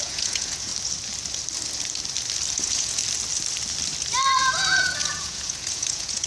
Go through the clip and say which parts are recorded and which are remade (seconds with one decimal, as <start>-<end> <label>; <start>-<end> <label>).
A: 0.0-0.7 remade; 0.7-2.5 recorded; 2.5-3.0 remade; 3.0-4.4 recorded; 4.4-6.3 remade

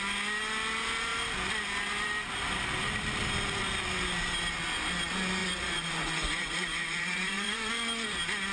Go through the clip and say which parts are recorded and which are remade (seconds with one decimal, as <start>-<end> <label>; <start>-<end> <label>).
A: 0.0-5.4 recorded; 5.4-7.7 remade; 7.7-8.5 recorded

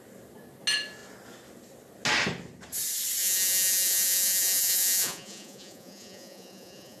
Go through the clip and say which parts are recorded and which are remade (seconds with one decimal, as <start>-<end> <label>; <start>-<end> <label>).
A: 0.0-3.2 recorded; 3.2-7.0 remade